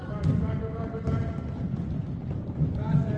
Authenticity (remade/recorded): recorded